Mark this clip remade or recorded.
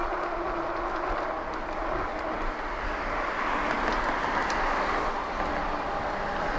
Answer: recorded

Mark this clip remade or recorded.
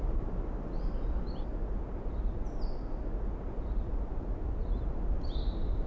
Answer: recorded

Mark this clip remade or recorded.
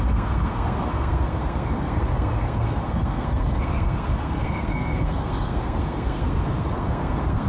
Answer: remade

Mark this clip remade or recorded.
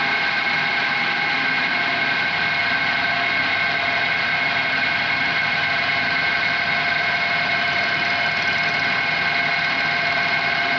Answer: recorded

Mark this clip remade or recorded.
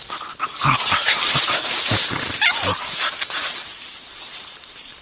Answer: remade